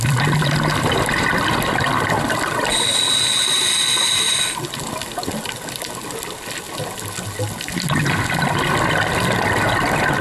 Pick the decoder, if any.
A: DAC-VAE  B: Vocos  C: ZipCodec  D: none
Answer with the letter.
D